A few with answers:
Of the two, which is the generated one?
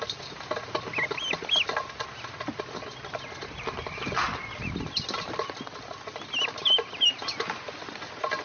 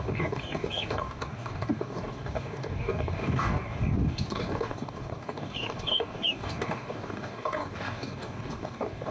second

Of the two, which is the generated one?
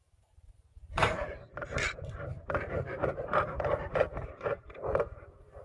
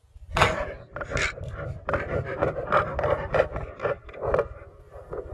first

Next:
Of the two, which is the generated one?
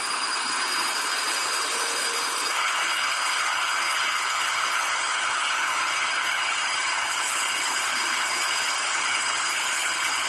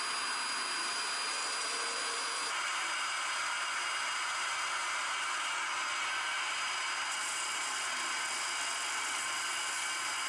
first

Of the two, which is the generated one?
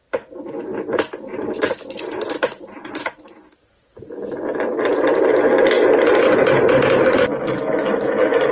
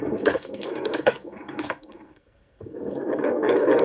second